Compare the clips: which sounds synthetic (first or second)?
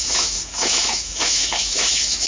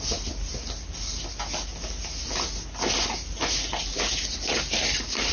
first